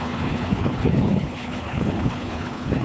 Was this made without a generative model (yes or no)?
no